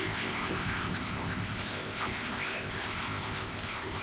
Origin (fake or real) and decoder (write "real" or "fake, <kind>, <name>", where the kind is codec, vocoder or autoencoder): fake, codec, ZipCodec